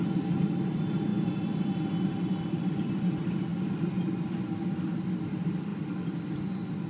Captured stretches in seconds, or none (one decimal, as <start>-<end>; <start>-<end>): 0.0-6.9